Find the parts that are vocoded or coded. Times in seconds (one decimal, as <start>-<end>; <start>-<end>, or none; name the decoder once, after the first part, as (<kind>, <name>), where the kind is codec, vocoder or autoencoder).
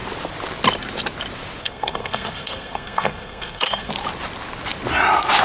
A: 1.6-3.9 (codec, SNAC)